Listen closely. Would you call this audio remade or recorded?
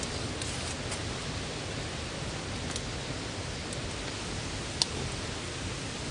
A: recorded